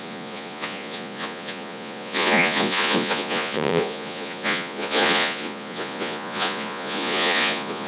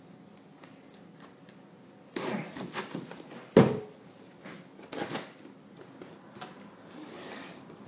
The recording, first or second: second